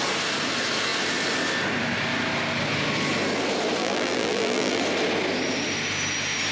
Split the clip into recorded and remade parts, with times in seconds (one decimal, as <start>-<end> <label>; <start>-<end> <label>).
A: 0.0-3.8 recorded; 3.8-4.8 remade; 4.8-6.5 recorded